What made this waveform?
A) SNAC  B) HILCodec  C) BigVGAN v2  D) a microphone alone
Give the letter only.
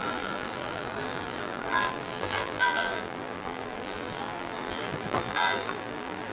C